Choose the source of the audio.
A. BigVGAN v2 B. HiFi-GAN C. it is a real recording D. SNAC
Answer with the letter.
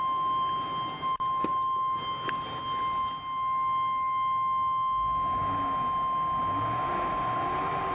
C